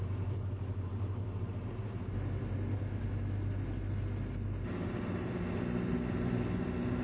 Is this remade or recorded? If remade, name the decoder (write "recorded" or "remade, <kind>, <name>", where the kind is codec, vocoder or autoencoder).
recorded